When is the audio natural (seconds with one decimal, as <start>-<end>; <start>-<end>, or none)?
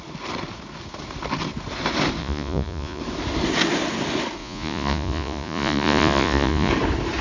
0.0-2.2; 3.0-4.4; 6.7-7.2